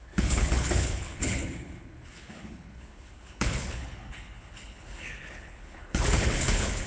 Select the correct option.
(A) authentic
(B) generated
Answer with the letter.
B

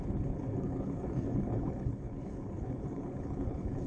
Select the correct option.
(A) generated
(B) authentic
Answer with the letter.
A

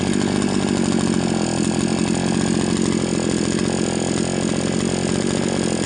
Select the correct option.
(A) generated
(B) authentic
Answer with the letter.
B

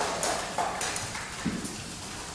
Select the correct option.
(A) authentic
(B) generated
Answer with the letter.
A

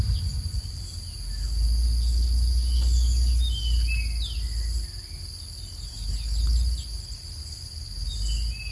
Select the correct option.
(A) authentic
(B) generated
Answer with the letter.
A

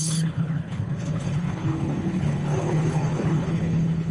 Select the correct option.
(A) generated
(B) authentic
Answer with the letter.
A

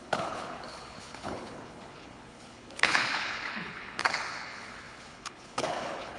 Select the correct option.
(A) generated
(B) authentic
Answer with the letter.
A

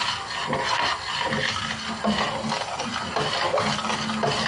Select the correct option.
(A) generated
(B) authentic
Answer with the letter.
B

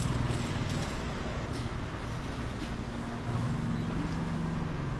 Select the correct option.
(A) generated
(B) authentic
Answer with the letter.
B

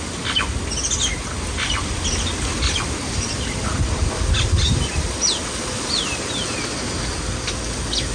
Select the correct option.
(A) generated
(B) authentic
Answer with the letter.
B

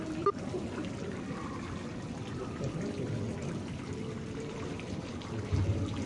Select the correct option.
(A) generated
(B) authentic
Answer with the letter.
B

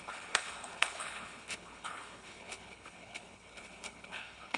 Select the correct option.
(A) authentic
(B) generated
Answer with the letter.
B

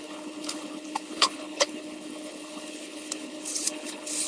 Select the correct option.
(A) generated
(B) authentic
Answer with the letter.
A